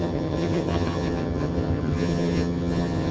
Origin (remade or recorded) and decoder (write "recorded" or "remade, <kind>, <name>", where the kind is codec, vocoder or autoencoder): remade, vocoder, HiFi-GAN